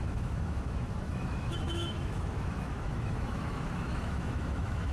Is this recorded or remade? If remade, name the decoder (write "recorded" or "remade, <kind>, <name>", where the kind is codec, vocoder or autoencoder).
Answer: remade, autoencoder, DAC-VAE